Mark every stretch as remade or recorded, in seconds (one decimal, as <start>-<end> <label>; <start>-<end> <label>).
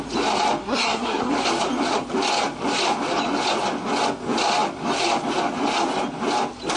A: 0.0-0.6 recorded; 0.6-1.3 remade; 1.3-6.8 recorded